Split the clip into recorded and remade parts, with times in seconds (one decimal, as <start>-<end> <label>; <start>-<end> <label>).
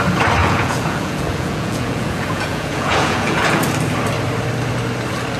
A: 0.0-0.4 recorded; 0.4-3.6 remade; 3.6-5.4 recorded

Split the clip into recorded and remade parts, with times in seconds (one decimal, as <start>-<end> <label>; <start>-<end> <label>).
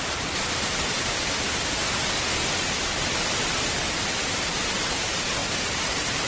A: 0.0-1.8 remade; 1.8-2.6 recorded; 2.6-3.0 remade; 3.0-3.9 recorded; 3.9-6.3 remade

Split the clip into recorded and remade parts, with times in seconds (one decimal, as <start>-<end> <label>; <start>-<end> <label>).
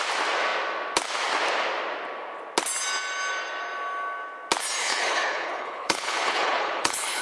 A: 0.0-4.8 recorded; 4.8-7.2 remade